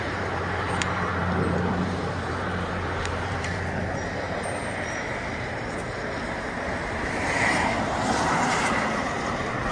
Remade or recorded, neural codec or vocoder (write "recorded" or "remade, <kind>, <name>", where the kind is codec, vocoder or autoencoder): remade, vocoder, BigVGAN v2